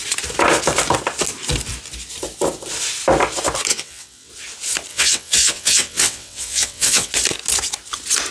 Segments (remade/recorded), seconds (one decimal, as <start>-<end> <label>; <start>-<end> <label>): 0.0-3.7 recorded; 3.7-4.3 remade; 4.3-4.9 recorded; 4.9-7.1 remade; 7.1-8.3 recorded